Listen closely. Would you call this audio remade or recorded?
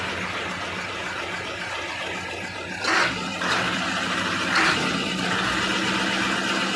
recorded